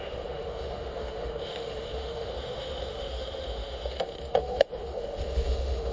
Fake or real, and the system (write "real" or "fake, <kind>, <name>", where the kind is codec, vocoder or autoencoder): fake, autoencoder, DAC-VAE